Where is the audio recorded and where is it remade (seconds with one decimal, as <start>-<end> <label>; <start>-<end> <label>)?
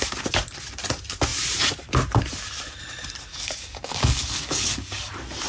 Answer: 0.0-3.3 recorded; 3.3-5.1 remade; 5.1-5.5 recorded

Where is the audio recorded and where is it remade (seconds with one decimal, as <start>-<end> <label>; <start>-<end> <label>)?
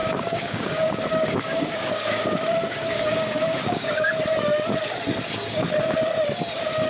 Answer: 0.0-4.1 remade; 4.1-6.9 recorded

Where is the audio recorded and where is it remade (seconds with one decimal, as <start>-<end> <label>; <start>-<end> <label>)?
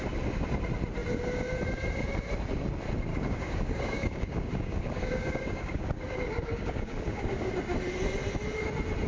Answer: 0.0-3.1 recorded; 3.1-7.5 remade; 7.5-9.1 recorded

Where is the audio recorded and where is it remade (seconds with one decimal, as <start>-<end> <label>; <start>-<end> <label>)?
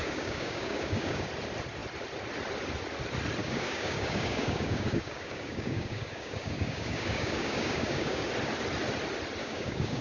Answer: 0.0-1.3 remade; 1.3-3.4 recorded; 3.4-8.3 remade; 8.3-9.4 recorded; 9.4-10.0 remade